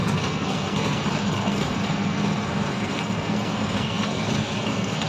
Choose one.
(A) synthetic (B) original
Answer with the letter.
A